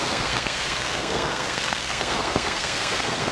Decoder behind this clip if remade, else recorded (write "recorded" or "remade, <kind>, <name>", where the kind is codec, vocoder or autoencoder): remade, codec, SNAC